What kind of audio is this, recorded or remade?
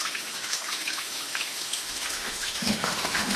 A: remade